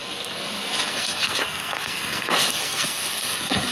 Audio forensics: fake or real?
fake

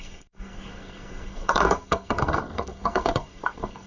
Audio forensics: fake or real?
fake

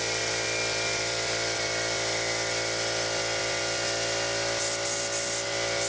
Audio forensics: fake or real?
real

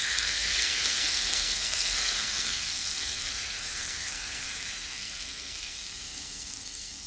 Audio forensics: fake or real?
fake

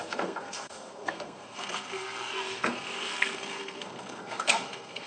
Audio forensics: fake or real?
fake